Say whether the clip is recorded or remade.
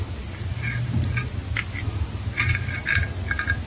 recorded